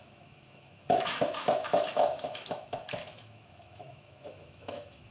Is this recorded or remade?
remade